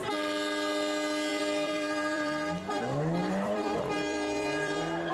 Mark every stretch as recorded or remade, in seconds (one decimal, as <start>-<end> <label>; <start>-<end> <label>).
0.0-1.3 recorded; 1.3-2.8 remade; 2.8-3.2 recorded; 3.2-5.1 remade